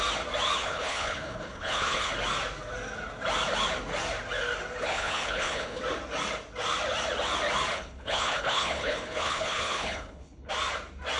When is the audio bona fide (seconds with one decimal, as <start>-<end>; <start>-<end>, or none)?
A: 0.0-0.6; 2.1-4.8; 5.8-7.7; 10.5-11.2